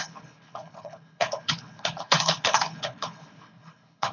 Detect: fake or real fake